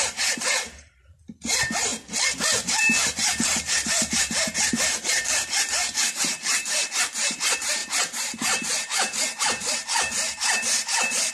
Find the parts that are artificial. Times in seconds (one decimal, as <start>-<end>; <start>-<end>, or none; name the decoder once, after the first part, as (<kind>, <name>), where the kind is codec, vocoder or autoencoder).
0.0-1.9 (vocoder, BigVGAN v2); 3.0-11.3